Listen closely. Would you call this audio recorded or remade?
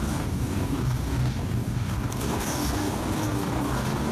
remade